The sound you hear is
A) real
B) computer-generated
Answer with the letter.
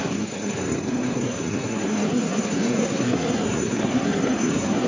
B